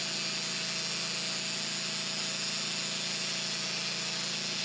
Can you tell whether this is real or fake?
real